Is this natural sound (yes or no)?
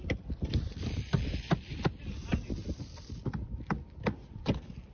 no